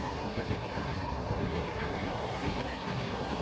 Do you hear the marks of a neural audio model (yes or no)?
yes